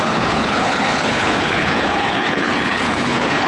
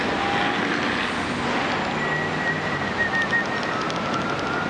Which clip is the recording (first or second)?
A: second